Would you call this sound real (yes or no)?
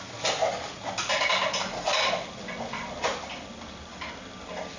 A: yes